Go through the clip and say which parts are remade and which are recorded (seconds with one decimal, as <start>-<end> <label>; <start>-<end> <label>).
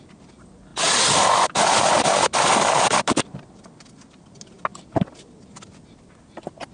0.0-6.7 recorded